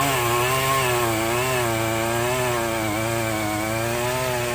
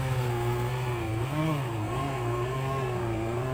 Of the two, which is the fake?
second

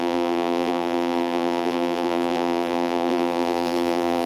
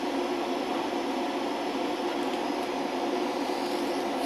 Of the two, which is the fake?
first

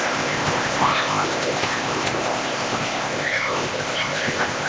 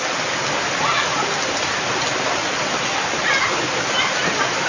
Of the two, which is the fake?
first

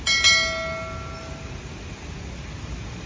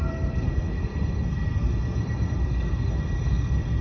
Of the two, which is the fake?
second